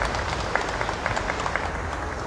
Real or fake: real